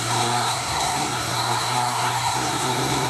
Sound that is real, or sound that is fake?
fake